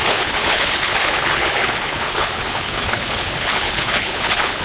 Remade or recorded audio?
remade